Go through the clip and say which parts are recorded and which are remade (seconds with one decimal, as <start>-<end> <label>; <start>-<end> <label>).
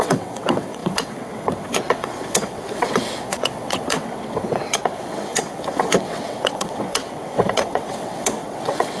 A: 0.0-9.0 remade